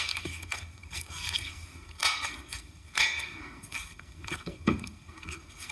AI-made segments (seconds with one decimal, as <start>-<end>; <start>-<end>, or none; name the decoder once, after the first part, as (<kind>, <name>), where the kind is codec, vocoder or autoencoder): 0.0-5.7 (codec, SNAC)